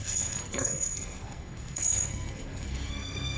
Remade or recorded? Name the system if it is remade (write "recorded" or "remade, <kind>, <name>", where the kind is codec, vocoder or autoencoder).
remade, codec, SNAC